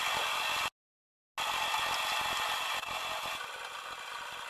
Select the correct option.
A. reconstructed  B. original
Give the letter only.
B